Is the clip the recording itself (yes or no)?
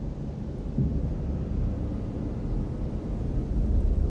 yes